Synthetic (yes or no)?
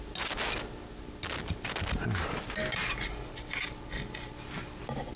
no